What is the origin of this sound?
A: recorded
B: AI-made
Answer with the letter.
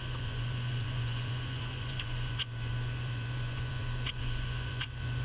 B